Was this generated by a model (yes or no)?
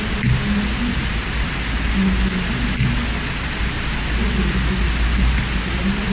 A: no